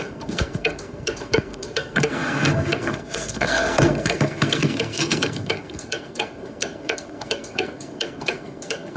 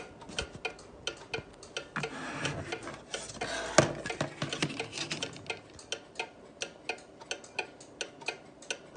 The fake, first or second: first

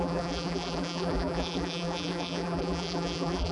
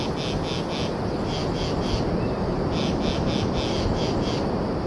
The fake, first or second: first